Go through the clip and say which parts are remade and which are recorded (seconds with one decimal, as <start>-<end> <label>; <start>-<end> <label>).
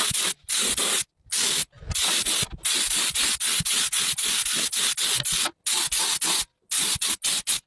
0.0-7.7 recorded